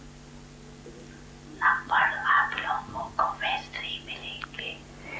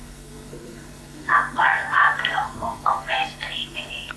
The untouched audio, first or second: first